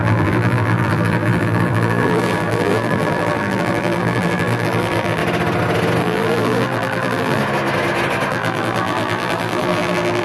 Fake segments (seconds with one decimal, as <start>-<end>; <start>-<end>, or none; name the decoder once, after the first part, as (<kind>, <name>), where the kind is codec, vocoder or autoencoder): 0.0-5.2 (vocoder, BigVGAN v2); 6.0-7.4; 8.3-10.2